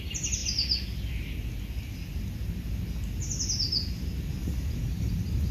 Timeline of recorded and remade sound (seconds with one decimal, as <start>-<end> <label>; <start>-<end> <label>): 0.0-4.4 recorded; 4.4-5.1 remade; 5.1-5.5 recorded

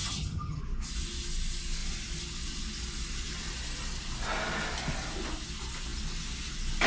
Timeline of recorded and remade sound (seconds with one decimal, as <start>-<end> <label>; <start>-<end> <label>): 0.0-0.6 remade; 0.6-6.9 recorded

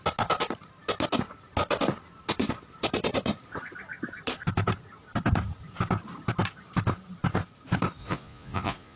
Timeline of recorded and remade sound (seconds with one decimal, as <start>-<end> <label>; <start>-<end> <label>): 0.0-8.0 recorded; 8.0-9.0 remade

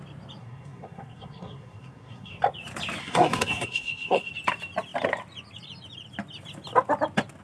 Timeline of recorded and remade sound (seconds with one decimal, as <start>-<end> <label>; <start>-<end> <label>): 0.0-0.4 recorded; 0.4-2.4 remade; 2.4-3.0 recorded; 3.0-4.3 remade; 4.3-7.4 recorded

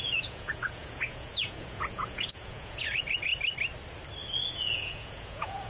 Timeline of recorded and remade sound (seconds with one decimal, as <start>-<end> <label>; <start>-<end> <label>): 0.0-3.3 remade; 3.3-4.5 recorded; 4.5-5.7 remade

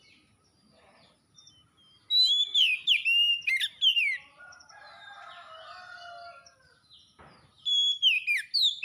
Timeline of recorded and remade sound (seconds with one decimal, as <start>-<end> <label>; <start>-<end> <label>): 0.0-3.9 recorded; 3.9-5.3 remade; 5.3-8.8 recorded

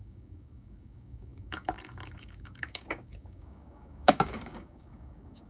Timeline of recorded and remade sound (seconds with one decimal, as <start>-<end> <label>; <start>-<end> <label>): 0.0-5.5 remade